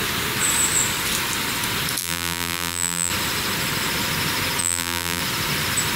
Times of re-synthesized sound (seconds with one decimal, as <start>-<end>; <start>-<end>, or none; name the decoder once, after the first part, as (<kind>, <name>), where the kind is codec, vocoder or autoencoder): 2.0-3.1 (vocoder, BigVGAN v2); 4.6-5.2